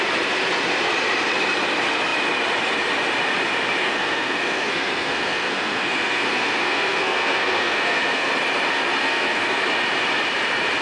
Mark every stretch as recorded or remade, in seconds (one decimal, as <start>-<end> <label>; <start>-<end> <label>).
0.0-3.8 recorded; 3.8-8.3 remade; 8.3-9.0 recorded; 9.0-9.6 remade; 9.6-10.8 recorded